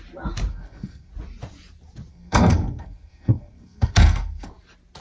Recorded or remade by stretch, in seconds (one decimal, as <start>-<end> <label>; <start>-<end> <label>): 0.0-0.5 recorded; 0.5-1.1 remade; 1.1-2.1 recorded; 2.1-4.5 remade; 4.5-5.0 recorded